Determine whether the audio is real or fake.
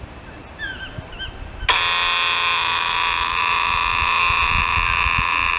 real